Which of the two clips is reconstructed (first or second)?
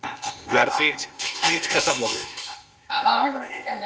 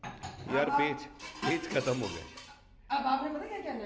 first